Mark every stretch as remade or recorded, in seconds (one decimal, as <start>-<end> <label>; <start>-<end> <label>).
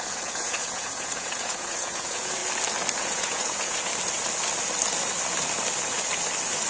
0.0-2.4 remade; 2.4-3.0 recorded; 3.0-3.9 remade; 3.9-6.7 recorded